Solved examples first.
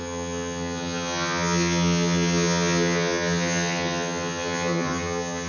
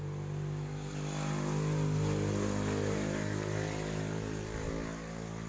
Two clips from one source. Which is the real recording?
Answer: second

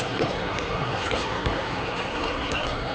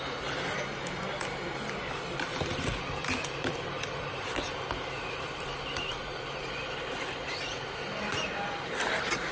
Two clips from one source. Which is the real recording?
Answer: second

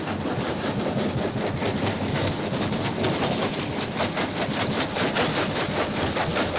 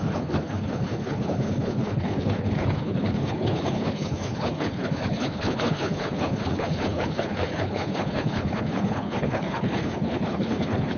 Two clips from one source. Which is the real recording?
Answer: first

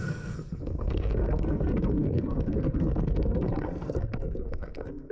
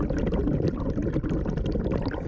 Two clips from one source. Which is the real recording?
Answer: second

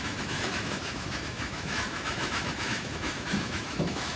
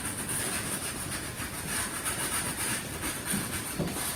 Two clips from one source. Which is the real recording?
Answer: second